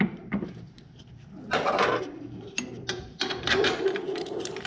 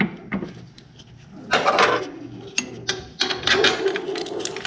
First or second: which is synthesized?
first